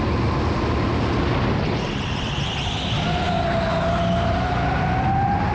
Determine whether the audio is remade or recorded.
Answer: recorded